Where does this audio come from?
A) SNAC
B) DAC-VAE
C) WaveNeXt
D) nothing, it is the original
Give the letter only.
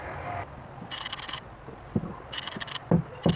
D